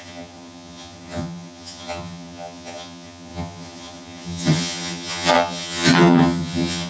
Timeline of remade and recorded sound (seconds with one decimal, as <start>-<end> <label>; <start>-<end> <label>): 0.0-6.9 remade